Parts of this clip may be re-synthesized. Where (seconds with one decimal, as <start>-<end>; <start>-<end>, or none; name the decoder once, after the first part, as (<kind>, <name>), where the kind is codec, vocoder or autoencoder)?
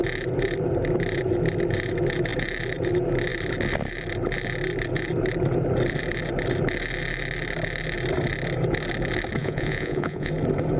9.4-10.3 (vocoder, Vocos)